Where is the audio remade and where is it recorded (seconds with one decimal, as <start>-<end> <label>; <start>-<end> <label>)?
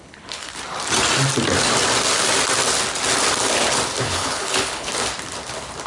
0.0-0.5 remade; 0.5-4.0 recorded; 4.0-4.9 remade; 4.9-5.9 recorded